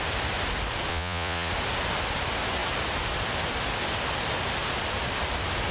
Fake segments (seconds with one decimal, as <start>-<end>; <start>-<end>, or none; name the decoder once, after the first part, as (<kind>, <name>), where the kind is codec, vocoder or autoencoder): 0.9-1.5 (vocoder, Vocos)